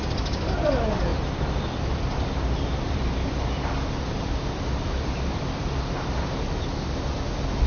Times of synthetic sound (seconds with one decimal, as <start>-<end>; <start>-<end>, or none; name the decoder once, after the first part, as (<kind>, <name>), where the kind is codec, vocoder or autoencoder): none